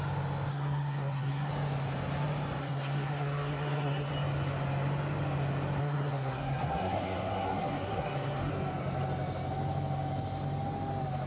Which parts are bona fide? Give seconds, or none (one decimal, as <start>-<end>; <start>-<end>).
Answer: 0.0-0.5; 1.5-2.6; 4.1-5.8; 8.5-11.3